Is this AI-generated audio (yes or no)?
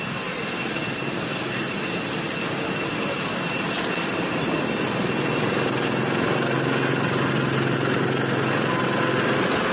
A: no